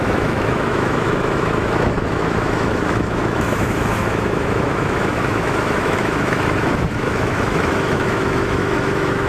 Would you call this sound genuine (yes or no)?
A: no